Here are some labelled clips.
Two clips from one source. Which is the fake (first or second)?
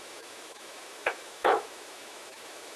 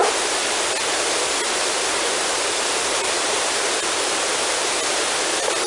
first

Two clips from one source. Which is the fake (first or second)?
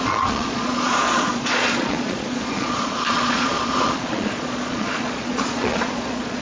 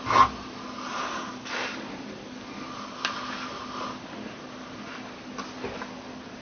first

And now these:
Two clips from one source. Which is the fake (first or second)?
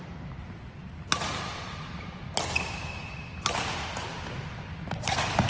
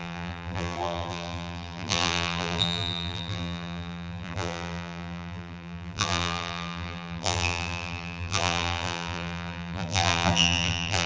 second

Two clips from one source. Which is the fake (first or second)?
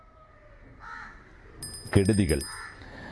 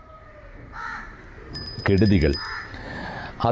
second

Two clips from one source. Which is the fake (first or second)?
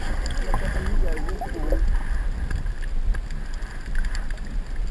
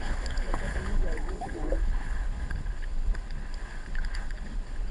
second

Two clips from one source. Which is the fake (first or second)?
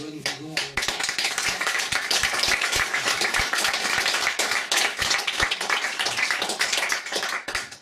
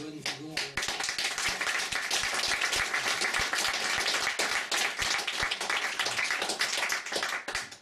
first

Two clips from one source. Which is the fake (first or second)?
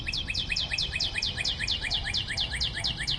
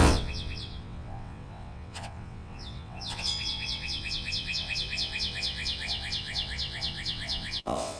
second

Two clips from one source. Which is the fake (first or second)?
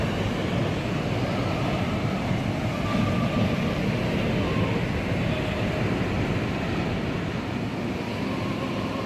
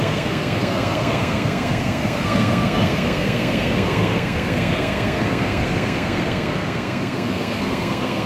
second